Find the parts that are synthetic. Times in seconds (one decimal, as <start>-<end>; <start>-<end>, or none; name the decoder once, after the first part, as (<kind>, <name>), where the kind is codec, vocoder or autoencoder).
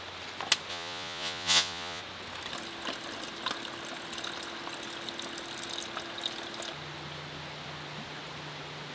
0.7-2.0 (vocoder, Vocos)